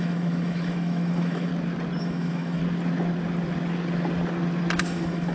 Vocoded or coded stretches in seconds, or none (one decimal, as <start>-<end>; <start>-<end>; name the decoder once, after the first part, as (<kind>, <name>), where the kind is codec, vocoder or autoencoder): 0.0-1.5 (autoencoder, DAC-VAE); 2.0-2.6; 4.8-5.3